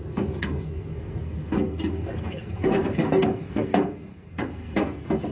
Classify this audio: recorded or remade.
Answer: remade